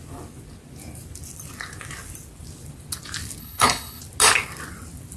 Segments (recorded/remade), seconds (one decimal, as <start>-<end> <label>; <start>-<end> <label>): 0.0-3.4 recorded; 3.4-4.0 remade; 4.0-5.2 recorded